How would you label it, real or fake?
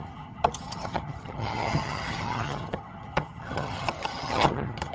fake